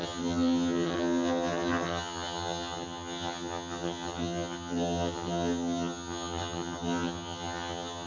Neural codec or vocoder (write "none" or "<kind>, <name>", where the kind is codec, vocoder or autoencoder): vocoder, HiFi-GAN